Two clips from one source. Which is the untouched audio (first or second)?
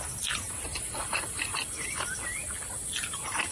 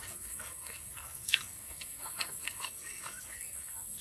first